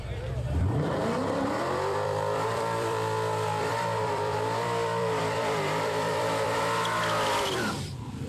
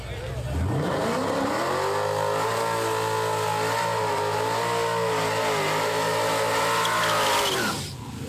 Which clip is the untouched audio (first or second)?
second